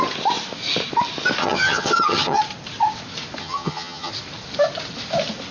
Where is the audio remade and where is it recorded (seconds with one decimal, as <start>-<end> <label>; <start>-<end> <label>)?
0.0-1.4 recorded; 1.4-2.4 remade; 2.4-3.4 recorded; 3.4-4.1 remade; 4.1-5.5 recorded